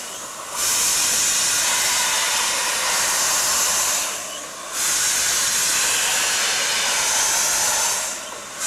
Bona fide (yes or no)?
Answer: yes